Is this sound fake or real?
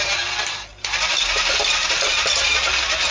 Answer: real